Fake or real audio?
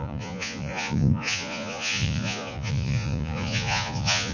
fake